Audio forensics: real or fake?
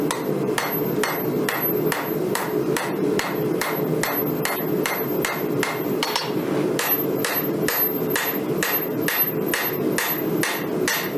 real